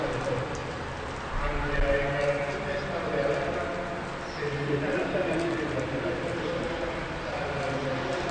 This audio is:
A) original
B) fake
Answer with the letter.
A